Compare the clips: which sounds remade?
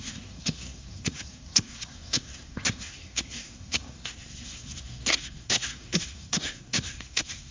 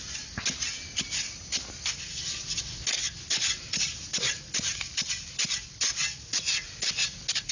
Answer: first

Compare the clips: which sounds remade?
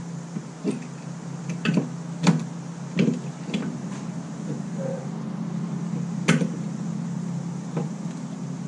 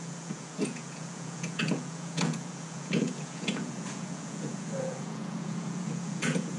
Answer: second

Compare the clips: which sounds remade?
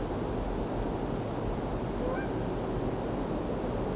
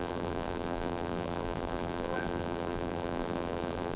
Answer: second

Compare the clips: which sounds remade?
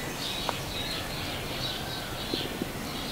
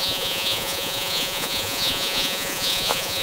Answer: second